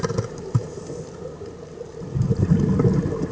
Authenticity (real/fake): real